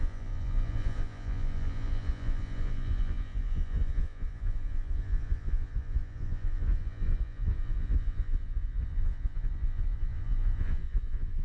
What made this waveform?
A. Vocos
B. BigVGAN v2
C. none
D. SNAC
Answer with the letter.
A